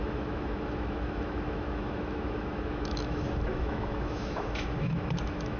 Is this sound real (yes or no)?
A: no